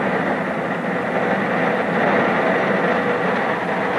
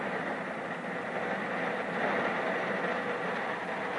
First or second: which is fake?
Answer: second